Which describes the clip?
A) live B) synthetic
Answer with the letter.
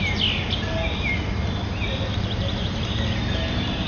A